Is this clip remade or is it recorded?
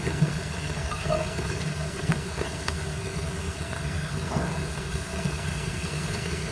remade